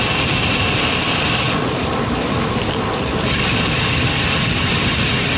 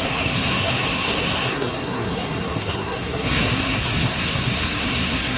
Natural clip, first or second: first